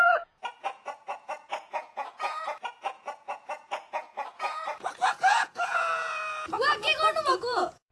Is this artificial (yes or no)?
yes